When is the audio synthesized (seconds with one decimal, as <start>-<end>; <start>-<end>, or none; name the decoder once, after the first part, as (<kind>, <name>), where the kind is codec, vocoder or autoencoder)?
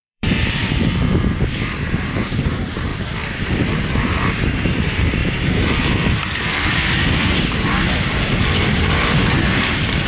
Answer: 0.0-2.9 (vocoder, BigVGAN v2); 3.8-10.1